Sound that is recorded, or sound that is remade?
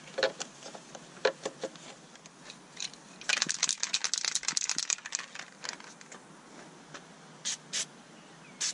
recorded